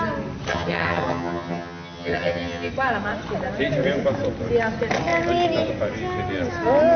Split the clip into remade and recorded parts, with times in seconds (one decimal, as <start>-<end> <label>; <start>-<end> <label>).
0.0-0.5 recorded; 0.5-2.7 remade; 2.7-7.0 recorded